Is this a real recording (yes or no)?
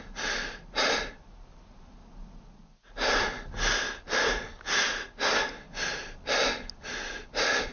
yes